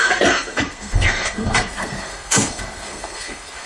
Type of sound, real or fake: fake